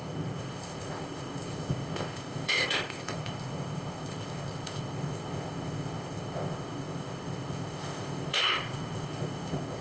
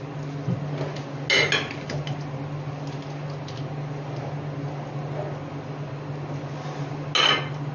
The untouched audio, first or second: second